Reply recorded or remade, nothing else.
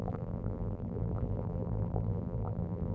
remade